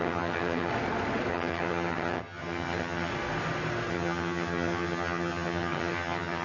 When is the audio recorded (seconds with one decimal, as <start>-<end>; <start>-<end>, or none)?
0.7-1.3; 3.1-3.9